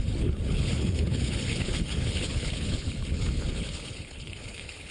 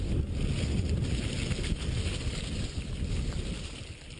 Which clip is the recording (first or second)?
second